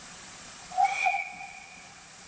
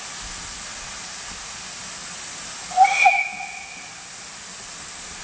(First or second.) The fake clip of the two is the first